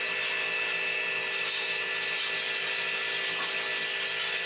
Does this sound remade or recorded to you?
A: recorded